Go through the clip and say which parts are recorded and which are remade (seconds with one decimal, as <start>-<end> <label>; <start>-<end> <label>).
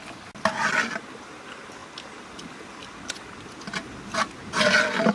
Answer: 0.0-5.1 recorded